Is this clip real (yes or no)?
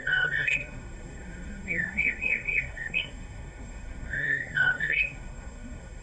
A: no